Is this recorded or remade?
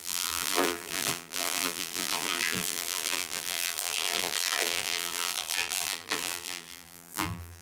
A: remade